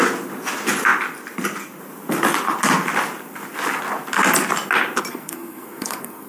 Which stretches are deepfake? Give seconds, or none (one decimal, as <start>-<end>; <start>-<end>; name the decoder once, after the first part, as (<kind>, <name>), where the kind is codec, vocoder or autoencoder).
5.1-6.3 (codec, SNAC)